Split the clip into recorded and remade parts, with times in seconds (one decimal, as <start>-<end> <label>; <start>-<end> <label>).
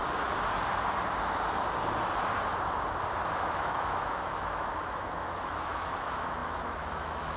0.0-3.3 recorded; 3.3-7.4 remade